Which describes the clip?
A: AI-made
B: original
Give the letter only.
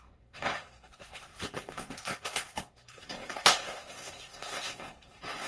A